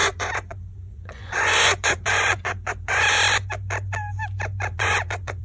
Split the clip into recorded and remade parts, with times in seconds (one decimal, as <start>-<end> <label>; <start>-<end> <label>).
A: 0.0-3.2 remade; 3.2-4.7 recorded; 4.7-5.4 remade